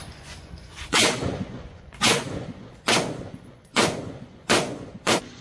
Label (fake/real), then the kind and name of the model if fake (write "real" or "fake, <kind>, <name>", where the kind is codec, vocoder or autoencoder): fake, vocoder, Vocos